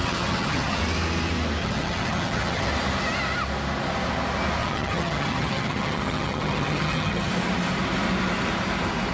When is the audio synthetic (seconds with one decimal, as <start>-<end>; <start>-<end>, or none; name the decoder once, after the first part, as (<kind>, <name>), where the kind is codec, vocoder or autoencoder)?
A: 0.0-0.8 (vocoder, HiFi-GAN); 1.6-2.7; 4.6-7.3